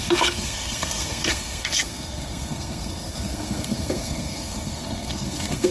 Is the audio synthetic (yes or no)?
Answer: yes